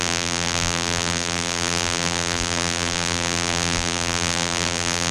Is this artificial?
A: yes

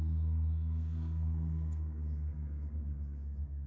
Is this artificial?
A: yes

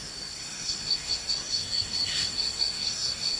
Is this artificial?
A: yes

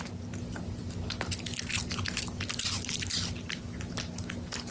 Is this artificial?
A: no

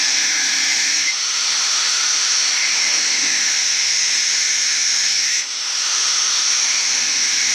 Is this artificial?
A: yes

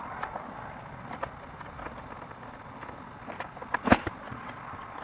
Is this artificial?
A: no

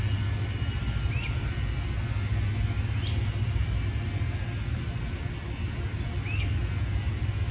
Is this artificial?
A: no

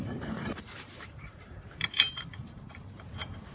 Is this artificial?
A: yes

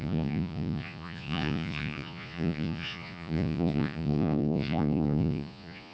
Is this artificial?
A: yes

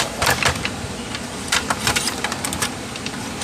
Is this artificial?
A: yes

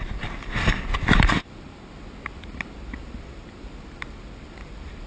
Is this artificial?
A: no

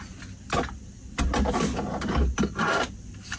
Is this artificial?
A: no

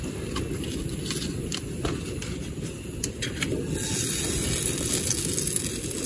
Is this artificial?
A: no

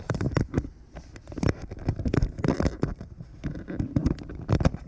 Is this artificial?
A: yes